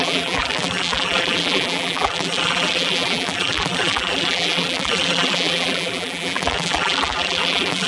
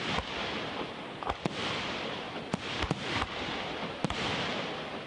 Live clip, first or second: second